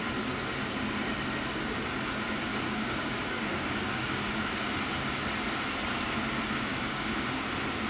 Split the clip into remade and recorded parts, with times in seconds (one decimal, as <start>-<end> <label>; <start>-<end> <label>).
0.0-2.5 recorded; 2.5-4.3 remade; 4.3-6.7 recorded; 6.7-7.5 remade; 7.5-7.9 recorded